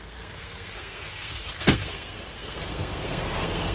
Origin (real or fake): fake